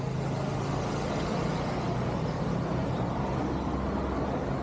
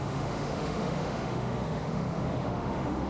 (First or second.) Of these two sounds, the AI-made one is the second